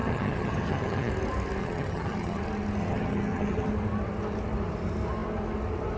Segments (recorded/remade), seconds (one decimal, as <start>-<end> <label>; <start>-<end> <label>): 0.0-1.1 remade; 1.1-1.6 recorded; 1.6-2.4 remade; 2.4-2.8 recorded; 2.8-3.7 remade; 3.7-6.0 recorded